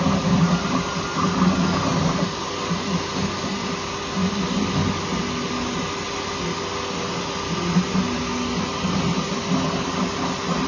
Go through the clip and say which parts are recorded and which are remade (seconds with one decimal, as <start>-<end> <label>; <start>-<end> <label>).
0.0-10.7 recorded